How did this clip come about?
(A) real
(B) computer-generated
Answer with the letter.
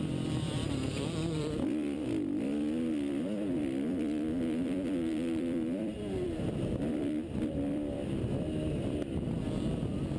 B